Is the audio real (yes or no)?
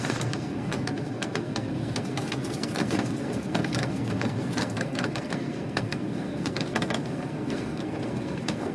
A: no